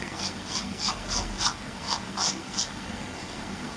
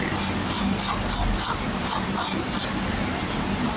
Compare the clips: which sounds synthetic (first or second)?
first